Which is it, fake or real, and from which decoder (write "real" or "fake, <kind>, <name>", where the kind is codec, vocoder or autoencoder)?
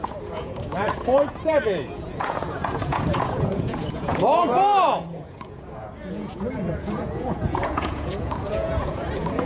fake, vocoder, Vocos